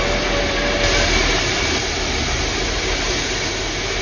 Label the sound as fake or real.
real